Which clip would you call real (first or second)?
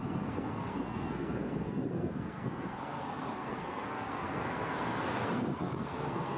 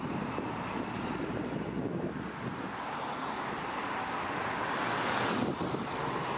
second